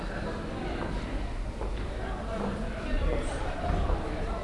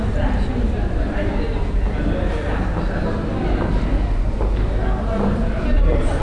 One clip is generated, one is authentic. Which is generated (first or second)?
first